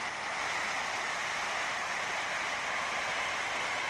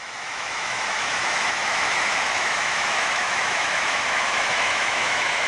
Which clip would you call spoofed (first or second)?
second